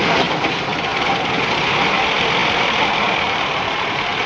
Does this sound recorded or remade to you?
remade